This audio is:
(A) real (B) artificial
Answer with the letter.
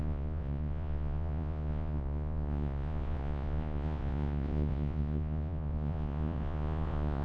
B